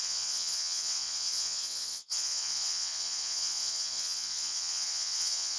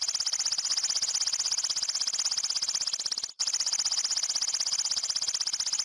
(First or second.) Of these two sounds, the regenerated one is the first